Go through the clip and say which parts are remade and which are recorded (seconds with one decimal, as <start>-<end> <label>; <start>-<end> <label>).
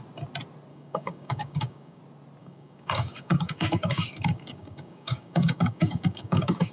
0.0-0.7 recorded; 0.7-2.0 remade; 2.0-2.4 recorded; 2.4-6.7 remade